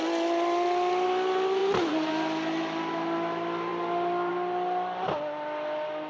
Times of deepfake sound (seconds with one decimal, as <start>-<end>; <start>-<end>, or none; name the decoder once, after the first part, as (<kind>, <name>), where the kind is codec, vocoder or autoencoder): 1.6-2.1 (vocoder, BigVGAN v2)

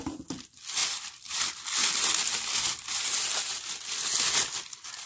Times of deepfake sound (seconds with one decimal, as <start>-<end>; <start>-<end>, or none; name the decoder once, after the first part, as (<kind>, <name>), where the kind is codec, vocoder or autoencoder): none

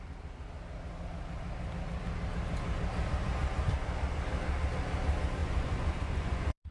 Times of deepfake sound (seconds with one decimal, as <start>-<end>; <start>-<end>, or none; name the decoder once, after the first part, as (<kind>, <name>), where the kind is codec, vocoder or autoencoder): 5.4-6.7 (vocoder, Vocos)

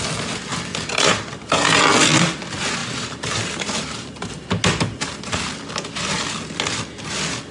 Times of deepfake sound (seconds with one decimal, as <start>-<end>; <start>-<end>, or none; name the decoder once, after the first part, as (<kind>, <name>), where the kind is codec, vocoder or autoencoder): 0.7-1.3 (vocoder, BigVGAN v2); 2.8-4.6

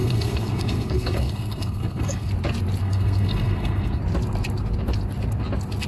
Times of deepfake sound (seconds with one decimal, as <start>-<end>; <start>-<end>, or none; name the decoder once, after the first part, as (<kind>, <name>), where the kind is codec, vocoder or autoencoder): 0.0-2.3 (codec, SNAC); 2.8-4.0

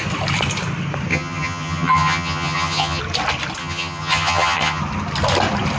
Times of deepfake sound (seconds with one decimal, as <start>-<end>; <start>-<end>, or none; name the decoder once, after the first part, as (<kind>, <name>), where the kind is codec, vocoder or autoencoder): 1.1-3.0 (vocoder, HiFi-GAN); 3.6-4.8

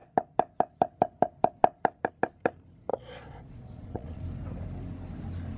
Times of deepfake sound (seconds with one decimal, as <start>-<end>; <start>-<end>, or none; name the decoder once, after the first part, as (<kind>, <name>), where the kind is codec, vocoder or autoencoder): 2.9-4.2 (vocoder, Vocos)

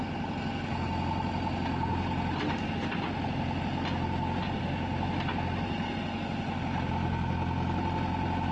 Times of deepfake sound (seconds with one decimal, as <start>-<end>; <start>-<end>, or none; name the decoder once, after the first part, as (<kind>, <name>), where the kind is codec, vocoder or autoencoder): none